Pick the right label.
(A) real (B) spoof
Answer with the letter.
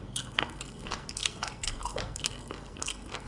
B